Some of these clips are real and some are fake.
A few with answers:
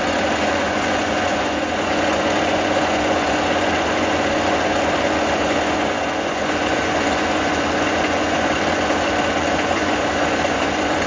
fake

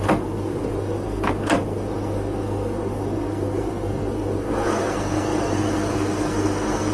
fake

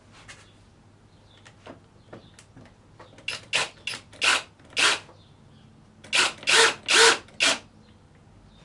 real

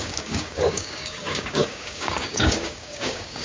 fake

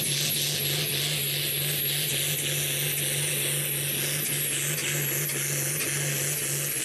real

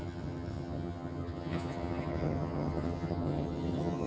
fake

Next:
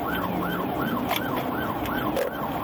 real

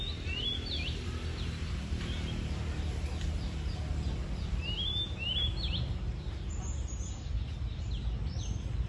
real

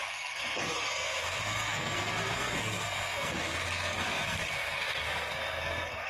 fake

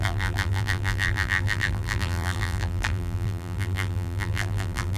fake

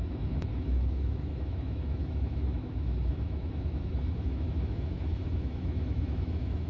fake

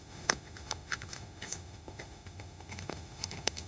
fake